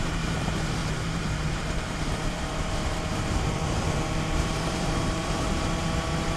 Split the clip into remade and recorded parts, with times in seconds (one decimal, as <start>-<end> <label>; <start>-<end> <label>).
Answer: 0.0-6.4 remade